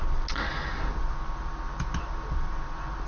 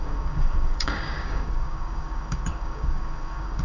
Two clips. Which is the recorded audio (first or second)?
first